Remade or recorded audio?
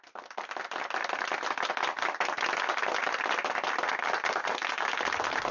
recorded